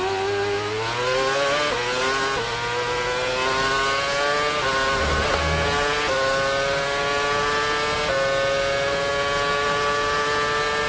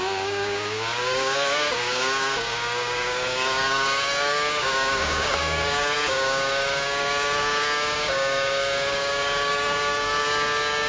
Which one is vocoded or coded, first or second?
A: second